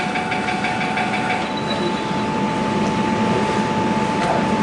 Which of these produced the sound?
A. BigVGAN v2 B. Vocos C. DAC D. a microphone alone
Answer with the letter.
D